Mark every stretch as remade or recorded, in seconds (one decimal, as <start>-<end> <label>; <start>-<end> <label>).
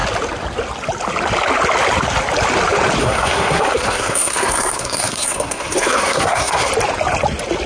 0.0-3.0 recorded; 3.0-6.7 remade; 6.7-7.7 recorded